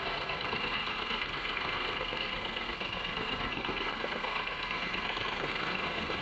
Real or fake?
fake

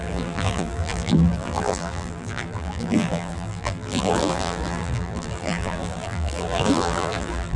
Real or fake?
fake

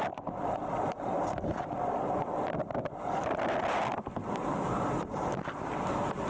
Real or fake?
fake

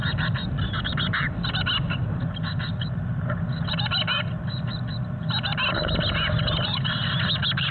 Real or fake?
real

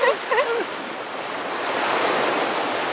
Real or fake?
real